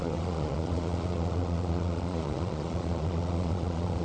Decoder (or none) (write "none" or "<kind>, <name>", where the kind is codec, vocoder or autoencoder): vocoder, Vocos